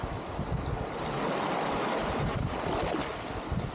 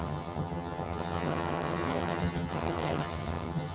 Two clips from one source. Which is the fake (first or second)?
second